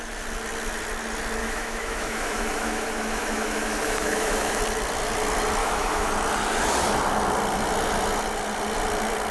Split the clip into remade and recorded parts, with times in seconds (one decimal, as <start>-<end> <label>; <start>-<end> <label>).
0.0-1.4 recorded; 1.4-4.6 remade; 4.6-5.6 recorded; 5.6-6.1 remade; 6.1-9.3 recorded